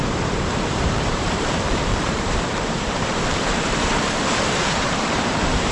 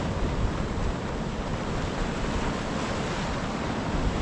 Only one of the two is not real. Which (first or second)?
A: first